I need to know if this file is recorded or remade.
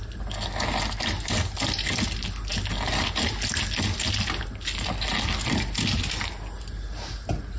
recorded